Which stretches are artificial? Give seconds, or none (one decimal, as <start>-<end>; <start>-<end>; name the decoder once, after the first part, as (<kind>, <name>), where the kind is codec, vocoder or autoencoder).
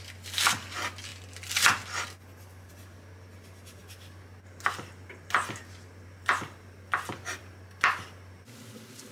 none